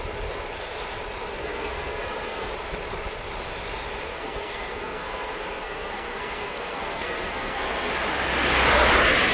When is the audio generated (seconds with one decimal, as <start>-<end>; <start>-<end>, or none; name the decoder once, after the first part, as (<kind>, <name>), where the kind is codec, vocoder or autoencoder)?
1.4-2.5 (codec, SNAC); 4.1-7.9